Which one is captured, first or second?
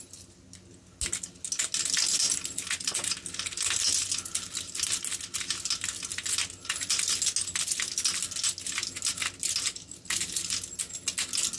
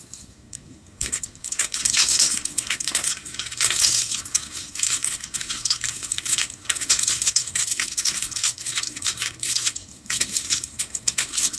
first